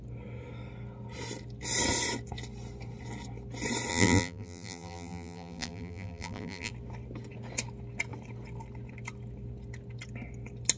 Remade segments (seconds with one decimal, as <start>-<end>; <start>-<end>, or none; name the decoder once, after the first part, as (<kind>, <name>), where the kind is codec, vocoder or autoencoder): 3.9-6.7 (vocoder, BigVGAN v2)